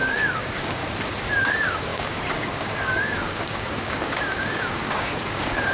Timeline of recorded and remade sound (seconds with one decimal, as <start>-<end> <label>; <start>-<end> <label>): 0.0-0.8 remade; 0.8-1.4 recorded; 1.4-5.7 remade